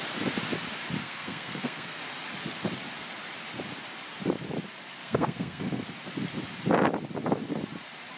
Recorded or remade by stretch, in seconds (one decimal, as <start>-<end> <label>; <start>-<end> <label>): 0.0-1.0 recorded; 1.0-2.0 remade; 2.0-5.0 recorded; 5.0-5.8 remade; 5.8-8.2 recorded